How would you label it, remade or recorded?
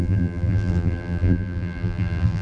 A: remade